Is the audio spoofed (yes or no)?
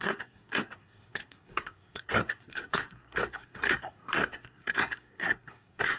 yes